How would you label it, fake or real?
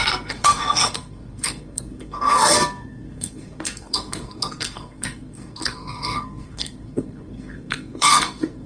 fake